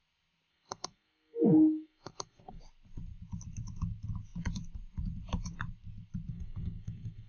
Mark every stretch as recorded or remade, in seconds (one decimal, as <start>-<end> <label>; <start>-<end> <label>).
0.0-0.5 recorded; 0.5-2.6 remade; 2.6-6.3 recorded; 6.3-7.3 remade